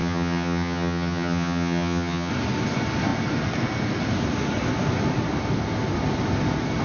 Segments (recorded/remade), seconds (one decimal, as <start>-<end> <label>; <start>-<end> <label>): 0.0-2.3 remade; 2.3-6.8 recorded